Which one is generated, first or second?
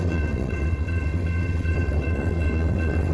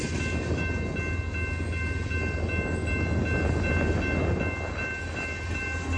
first